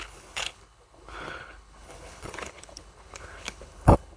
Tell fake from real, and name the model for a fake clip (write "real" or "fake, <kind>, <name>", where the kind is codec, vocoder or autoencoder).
fake, codec, HILCodec